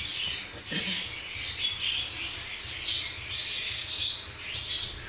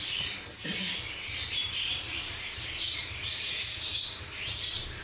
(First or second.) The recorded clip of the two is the first